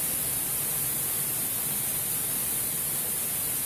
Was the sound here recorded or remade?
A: recorded